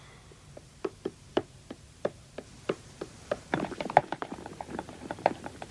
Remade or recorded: remade